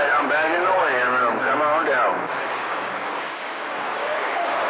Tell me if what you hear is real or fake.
fake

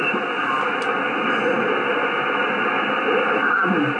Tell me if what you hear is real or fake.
real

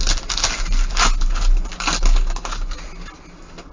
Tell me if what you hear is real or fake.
real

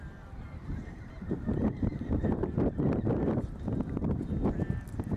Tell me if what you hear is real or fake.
fake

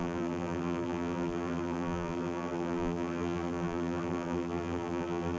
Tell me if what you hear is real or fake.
fake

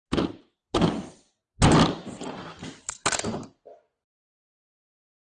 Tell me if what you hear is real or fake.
real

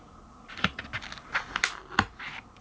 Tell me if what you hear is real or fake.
real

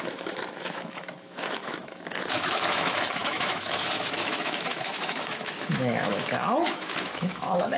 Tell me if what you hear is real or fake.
fake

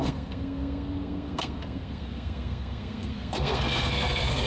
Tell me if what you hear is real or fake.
fake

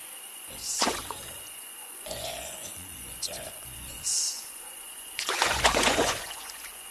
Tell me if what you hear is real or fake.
fake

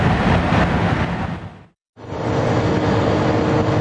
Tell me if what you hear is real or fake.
real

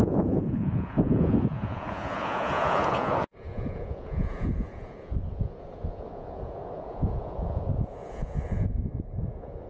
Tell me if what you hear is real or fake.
fake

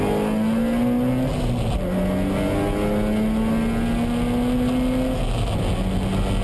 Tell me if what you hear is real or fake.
real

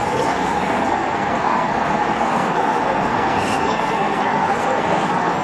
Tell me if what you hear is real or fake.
fake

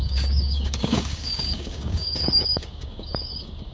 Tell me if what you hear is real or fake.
fake